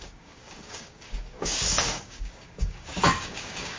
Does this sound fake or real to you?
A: fake